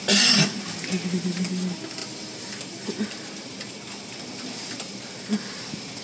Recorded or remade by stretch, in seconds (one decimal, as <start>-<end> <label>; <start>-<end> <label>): 0.0-2.0 recorded; 2.0-3.8 remade; 3.8-6.0 recorded